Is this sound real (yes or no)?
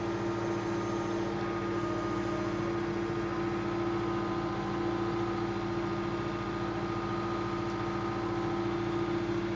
yes